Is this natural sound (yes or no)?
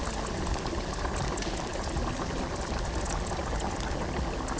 yes